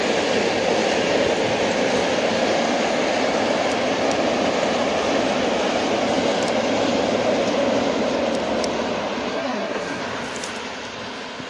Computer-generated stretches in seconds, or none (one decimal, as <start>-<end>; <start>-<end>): 9.3-10.0